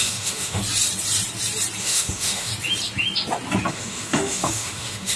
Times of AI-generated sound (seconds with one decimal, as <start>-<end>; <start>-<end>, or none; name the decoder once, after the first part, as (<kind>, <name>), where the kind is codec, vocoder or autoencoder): 0.0-0.6 (autoencoder, DAC-VAE); 1.8-2.5; 3.7-5.2